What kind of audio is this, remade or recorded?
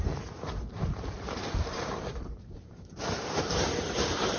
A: remade